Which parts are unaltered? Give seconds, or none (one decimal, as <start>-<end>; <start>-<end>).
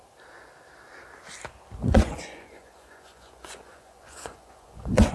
0.0-1.8